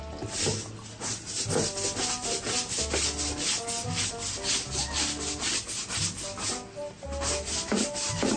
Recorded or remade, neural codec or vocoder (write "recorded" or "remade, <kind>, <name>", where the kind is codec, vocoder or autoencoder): recorded